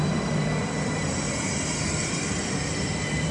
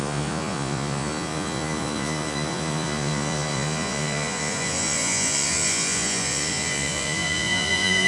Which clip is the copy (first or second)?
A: second